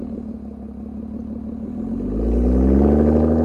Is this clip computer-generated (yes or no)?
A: no